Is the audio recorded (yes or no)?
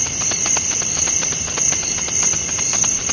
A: yes